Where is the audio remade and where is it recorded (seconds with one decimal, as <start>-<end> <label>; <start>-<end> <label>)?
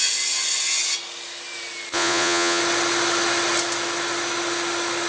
0.0-1.9 recorded; 1.9-2.6 remade; 2.6-5.1 recorded